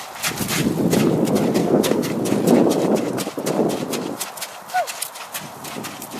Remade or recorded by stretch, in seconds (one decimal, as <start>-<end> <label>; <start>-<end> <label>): 0.0-1.6 recorded; 1.6-2.1 remade; 2.1-6.2 recorded